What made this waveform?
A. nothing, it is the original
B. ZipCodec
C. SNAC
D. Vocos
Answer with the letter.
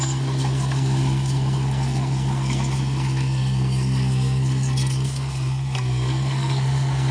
C